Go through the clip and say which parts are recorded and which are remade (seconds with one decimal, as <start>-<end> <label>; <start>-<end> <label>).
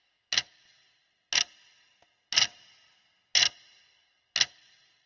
0.0-5.1 recorded